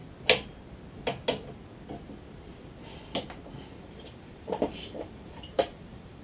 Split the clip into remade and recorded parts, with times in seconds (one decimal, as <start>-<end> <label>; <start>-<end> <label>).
0.0-3.7 recorded; 3.7-6.2 remade